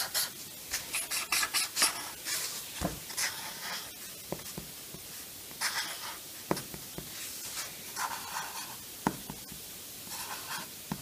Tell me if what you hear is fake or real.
real